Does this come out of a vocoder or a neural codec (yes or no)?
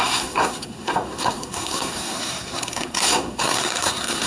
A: yes